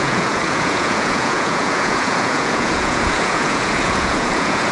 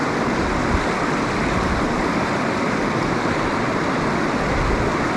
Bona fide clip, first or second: second